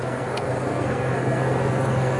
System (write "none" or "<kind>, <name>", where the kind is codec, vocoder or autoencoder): codec, SNAC